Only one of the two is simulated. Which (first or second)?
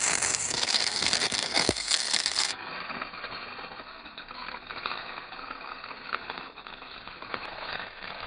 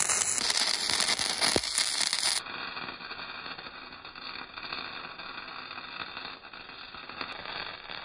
first